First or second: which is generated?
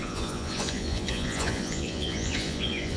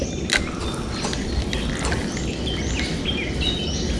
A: first